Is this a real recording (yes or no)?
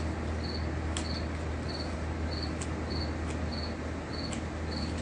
yes